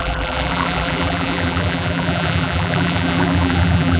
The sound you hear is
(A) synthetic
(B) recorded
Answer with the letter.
A